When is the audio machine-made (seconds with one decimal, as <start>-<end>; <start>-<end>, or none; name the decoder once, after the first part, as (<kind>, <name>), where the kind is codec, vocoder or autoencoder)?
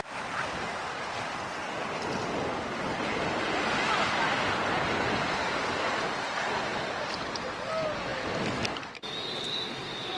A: none